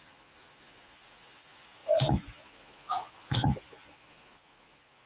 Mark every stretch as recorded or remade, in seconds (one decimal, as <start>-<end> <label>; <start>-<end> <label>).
0.0-5.1 remade